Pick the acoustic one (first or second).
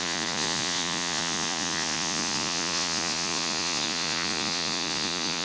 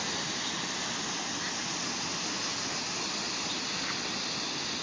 second